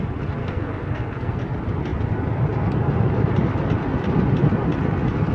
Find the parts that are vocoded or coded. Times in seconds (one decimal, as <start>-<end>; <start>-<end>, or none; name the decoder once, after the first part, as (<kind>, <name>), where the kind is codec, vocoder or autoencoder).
0.4-1.4 (codec, SNAC)